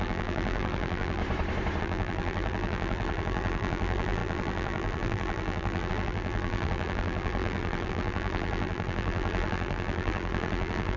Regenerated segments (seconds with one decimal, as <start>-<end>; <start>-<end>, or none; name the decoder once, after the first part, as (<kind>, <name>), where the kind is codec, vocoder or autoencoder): 0.0-1.2 (vocoder, BigVGAN v2); 1.8-11.0